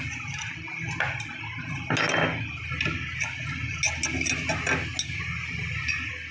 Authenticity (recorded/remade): recorded